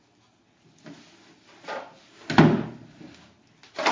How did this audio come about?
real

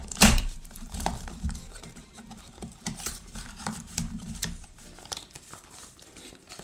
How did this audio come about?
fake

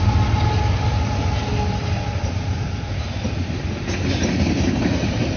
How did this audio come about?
real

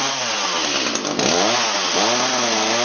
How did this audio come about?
real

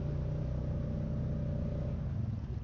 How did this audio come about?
real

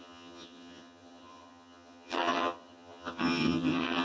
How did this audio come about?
fake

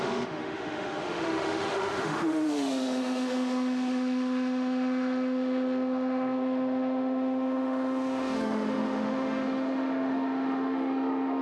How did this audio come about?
fake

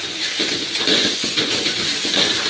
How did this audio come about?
fake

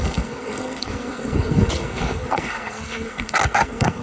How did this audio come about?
fake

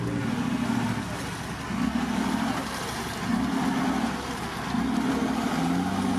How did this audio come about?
real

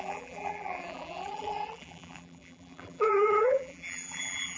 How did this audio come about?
fake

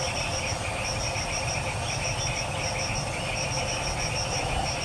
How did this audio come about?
real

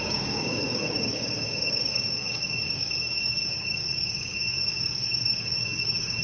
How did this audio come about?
fake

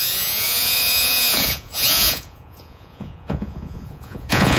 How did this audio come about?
fake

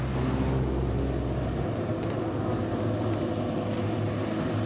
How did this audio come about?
real